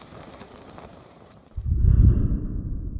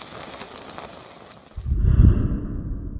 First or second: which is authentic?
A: second